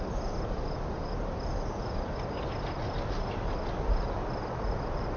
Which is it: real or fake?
real